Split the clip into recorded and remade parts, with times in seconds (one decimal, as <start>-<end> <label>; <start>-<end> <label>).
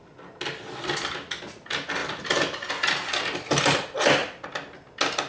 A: 0.0-2.0 recorded; 2.0-2.7 remade; 2.7-5.3 recorded